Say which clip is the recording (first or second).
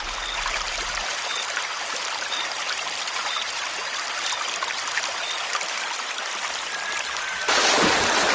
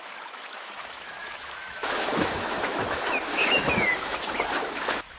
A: first